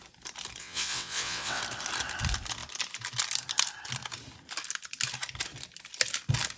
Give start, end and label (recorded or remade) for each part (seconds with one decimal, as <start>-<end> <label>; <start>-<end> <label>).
0.0-0.6 recorded; 0.6-1.6 remade; 1.6-6.6 recorded